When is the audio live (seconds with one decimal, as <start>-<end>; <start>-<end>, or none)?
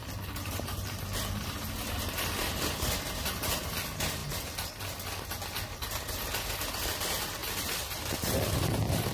2.0-7.4; 8.2-9.1